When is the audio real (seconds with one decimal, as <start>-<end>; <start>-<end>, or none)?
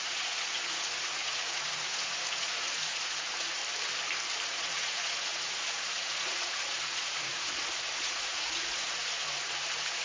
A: 3.6-4.4